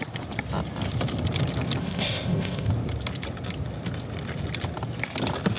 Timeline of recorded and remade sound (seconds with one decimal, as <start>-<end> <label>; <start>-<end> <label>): 0.0-1.8 recorded; 1.8-2.7 remade; 2.7-5.6 recorded